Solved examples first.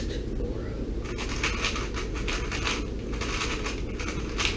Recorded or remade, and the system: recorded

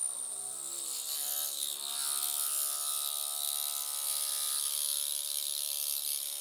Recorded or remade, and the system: recorded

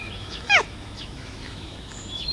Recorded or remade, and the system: remade, autoencoder, DAC-VAE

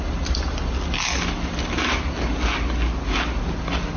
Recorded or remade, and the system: recorded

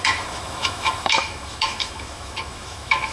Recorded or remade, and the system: remade, autoencoder, DAC-VAE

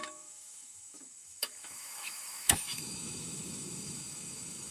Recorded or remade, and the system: remade, autoencoder, DAC-VAE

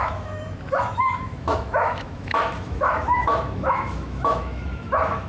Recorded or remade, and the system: remade, autoencoder, DAC-VAE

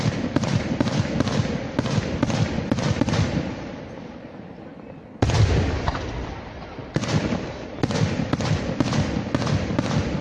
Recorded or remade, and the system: recorded